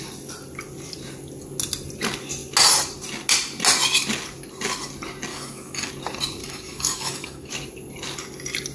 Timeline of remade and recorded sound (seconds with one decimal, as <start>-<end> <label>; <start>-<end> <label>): 0.0-5.3 recorded; 5.3-5.9 remade; 5.9-6.4 recorded; 6.4-7.5 remade; 7.5-8.7 recorded